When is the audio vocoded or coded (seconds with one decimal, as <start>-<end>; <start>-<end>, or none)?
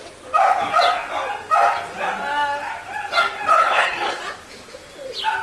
3.5-4.2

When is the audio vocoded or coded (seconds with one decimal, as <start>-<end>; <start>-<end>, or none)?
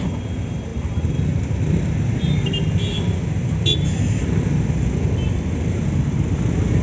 none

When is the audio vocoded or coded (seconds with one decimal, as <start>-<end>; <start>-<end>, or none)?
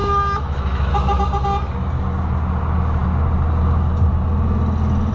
0.0-0.9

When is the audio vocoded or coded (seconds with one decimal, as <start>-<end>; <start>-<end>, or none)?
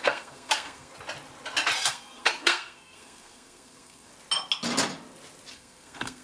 0.0-0.9; 1.9-4.1; 5.5-6.2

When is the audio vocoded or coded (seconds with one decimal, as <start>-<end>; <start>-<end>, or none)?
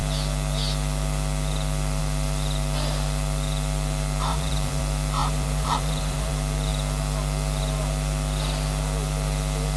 4.3-4.8; 5.2-6.3